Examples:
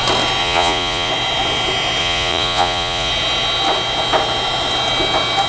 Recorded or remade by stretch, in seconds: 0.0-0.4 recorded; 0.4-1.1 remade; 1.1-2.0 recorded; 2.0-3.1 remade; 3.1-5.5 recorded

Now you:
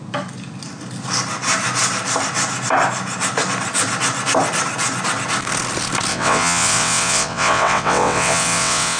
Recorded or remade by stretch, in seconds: 0.0-6.1 recorded; 6.1-9.0 remade

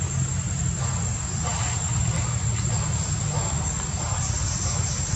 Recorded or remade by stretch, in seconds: 0.0-5.2 recorded

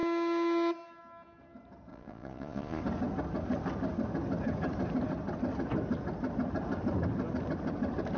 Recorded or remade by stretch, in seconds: 0.0-1.9 recorded; 1.9-2.8 remade; 2.8-8.2 recorded

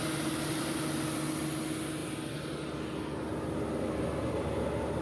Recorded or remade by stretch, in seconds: 0.0-5.0 recorded

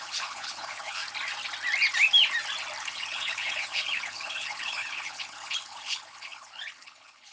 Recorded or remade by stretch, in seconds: 0.0-1.0 remade; 1.0-2.8 recorded; 2.8-7.3 remade

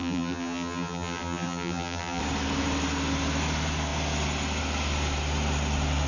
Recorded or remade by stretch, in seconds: 0.0-2.2 remade; 2.2-6.1 recorded

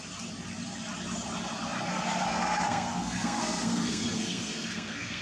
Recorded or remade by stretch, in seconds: 0.0-1.9 recorded; 1.9-5.2 remade